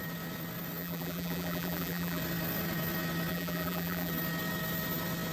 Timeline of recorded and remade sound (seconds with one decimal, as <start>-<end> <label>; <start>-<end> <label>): 0.0-0.8 recorded; 0.8-2.2 remade; 2.2-3.3 recorded; 3.3-4.1 remade; 4.1-5.3 recorded